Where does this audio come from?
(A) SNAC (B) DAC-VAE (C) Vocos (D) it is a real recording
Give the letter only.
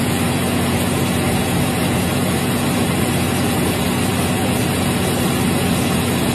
C